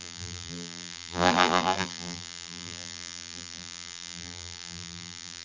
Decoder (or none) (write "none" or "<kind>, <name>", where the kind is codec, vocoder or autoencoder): vocoder, BigVGAN v2